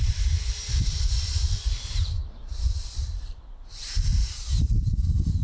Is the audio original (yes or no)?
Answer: no